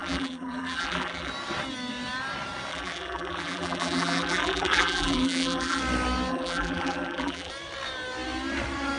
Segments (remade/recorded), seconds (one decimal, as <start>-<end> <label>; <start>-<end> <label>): 0.0-1.3 remade; 1.3-2.7 recorded; 2.7-5.8 remade; 5.8-6.3 recorded; 6.3-7.5 remade; 7.5-9.0 recorded